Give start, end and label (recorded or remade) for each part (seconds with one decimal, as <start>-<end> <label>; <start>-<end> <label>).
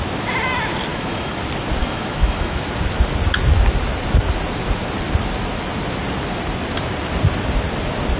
0.0-0.9 recorded; 0.9-1.4 remade; 1.4-1.8 recorded; 1.8-2.6 remade; 2.6-8.2 recorded